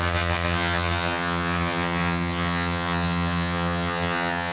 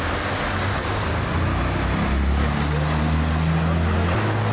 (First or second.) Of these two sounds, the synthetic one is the first